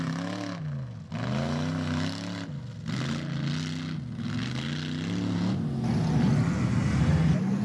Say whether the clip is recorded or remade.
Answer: recorded